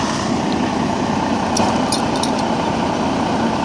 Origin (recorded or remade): recorded